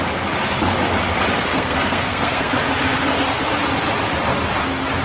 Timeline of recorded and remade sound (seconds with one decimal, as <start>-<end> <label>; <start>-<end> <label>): 0.0-1.5 recorded; 1.5-2.5 remade; 2.5-5.0 recorded